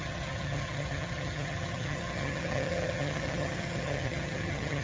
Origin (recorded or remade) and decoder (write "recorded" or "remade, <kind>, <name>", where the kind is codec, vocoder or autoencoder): remade, vocoder, HiFi-GAN